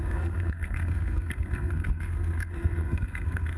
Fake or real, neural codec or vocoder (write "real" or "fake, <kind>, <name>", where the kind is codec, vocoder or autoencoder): fake, codec, SNAC